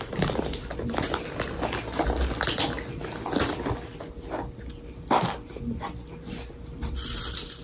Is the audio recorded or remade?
recorded